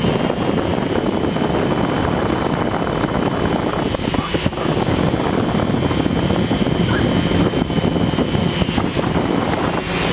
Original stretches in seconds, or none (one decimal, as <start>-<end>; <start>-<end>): 0.0-0.7; 2.6-8.4

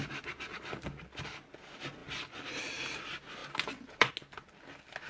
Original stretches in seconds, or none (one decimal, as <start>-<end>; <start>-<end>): 0.0-3.4; 4.1-5.1

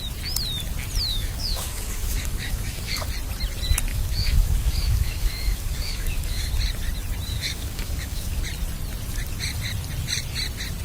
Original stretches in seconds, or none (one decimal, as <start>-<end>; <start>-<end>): 0.0-1.1; 3.1-3.9; 6.5-7.3; 8.4-10.8

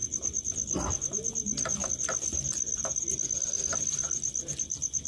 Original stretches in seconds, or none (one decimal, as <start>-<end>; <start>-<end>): 0.0-5.1

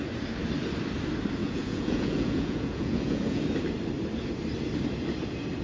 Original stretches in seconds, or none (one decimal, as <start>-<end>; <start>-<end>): 0.0-1.4; 3.4-5.6

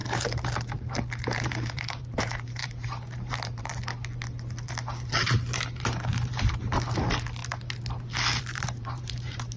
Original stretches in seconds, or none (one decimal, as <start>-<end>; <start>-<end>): 3.7-5.2; 7.4-8.4

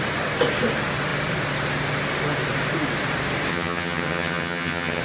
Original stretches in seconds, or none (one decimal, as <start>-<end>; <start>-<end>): 0.0-3.5